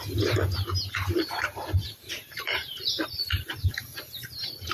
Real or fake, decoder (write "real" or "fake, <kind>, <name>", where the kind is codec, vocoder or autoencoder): fake, vocoder, BigVGAN v2